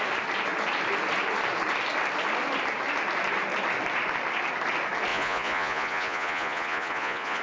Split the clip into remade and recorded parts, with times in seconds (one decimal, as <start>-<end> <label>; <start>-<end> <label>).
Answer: 0.0-5.1 recorded; 5.1-7.4 remade